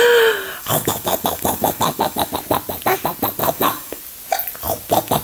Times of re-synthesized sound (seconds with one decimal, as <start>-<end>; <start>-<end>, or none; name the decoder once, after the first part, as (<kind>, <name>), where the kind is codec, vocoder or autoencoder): 0.6-2.3 (codec, DAC); 3.4-4.0